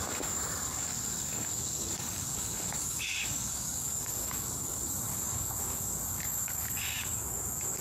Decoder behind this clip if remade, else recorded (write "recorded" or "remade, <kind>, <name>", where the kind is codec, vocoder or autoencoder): remade, codec, DAC